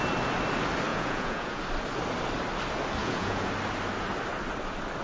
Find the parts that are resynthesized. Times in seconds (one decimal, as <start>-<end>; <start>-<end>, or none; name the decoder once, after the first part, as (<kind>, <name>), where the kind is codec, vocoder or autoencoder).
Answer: 0.9-1.6 (vocoder, Vocos); 3.0-3.5